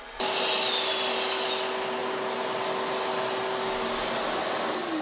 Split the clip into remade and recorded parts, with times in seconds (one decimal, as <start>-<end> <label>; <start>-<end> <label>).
0.0-5.0 recorded